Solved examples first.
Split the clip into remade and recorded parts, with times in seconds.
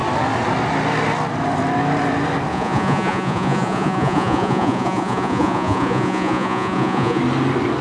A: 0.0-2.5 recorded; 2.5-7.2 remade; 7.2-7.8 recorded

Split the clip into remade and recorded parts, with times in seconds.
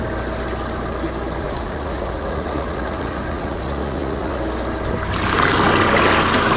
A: 0.0-1.4 recorded; 1.4-4.4 remade; 4.4-6.6 recorded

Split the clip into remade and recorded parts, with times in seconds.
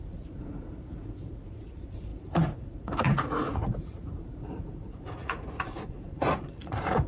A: 0.0-7.1 remade